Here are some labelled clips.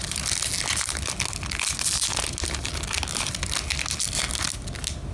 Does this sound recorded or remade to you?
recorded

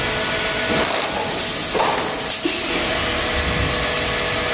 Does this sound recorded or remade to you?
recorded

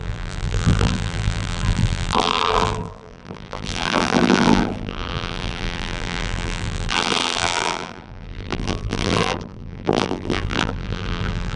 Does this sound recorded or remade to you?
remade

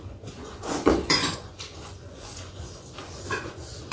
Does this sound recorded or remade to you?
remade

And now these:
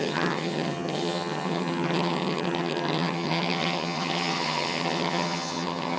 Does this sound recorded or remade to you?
remade